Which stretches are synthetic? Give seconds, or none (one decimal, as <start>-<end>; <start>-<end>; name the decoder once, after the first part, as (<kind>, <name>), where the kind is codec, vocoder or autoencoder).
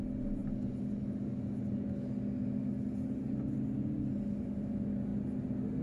none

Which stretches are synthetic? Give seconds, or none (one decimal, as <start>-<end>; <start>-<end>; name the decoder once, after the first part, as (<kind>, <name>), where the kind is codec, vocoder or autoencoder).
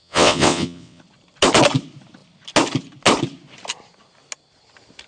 0.0-1.0 (vocoder, WaveNeXt)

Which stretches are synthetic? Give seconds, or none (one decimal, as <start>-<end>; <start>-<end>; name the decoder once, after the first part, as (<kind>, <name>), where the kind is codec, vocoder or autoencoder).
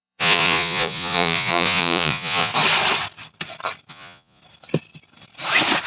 0.0-2.5 (vocoder, Vocos); 3.9-4.4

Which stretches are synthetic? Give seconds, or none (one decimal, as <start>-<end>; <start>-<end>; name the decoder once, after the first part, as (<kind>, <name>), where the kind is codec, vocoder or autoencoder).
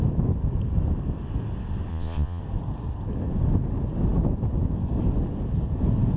1.9-2.4 (vocoder, Vocos)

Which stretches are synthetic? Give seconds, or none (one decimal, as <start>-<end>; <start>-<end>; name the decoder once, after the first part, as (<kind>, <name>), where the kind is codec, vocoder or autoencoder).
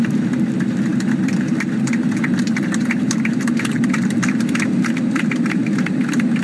0.9-4.7 (vocoder, BigVGAN v2)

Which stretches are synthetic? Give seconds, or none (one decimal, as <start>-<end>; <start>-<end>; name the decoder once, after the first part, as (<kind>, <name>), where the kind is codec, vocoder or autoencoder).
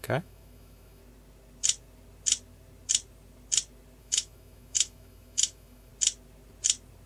0.0-1.0 (autoencoder, DAC-VAE); 4.0-5.9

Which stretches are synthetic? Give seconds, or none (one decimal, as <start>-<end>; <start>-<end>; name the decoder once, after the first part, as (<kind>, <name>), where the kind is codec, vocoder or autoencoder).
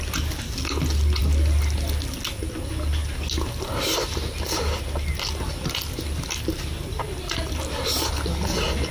none